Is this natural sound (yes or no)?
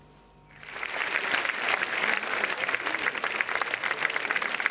yes